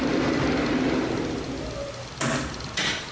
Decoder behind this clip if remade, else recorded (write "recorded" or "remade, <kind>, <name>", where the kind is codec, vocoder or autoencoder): recorded